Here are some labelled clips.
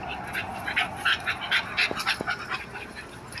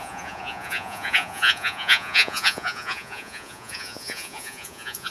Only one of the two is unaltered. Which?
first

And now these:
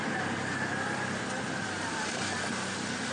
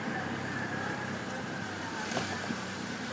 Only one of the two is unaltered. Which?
first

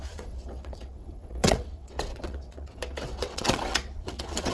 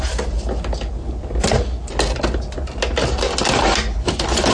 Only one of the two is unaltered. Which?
second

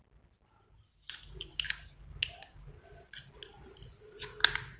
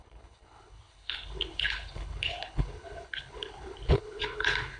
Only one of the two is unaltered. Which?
first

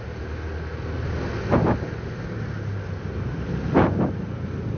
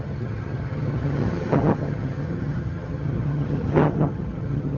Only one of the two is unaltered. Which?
first